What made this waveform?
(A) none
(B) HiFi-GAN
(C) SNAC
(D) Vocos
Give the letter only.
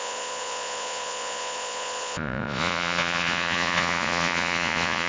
D